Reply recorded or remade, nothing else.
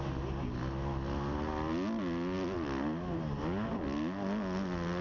recorded